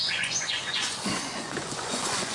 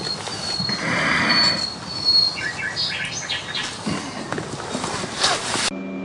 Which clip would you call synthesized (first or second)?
first